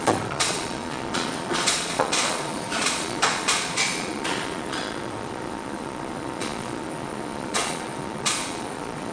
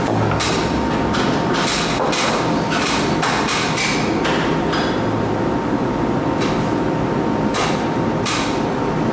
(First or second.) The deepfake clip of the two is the first